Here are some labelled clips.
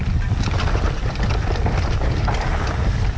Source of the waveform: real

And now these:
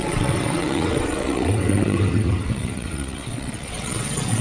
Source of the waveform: fake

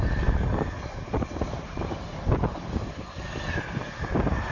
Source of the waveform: real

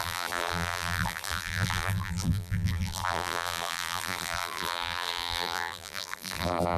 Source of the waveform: fake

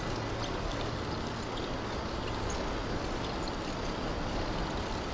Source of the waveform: real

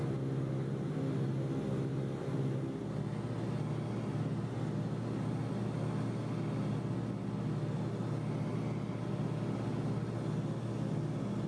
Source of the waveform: real